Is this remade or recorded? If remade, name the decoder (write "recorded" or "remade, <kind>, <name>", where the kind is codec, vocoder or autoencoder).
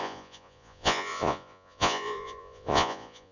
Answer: remade, vocoder, Vocos